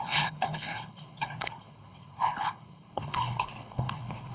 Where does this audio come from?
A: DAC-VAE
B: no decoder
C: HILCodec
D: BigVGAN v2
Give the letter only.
C